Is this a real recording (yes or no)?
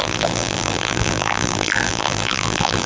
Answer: no